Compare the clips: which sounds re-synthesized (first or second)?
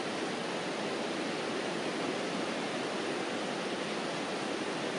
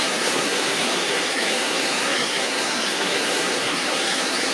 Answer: second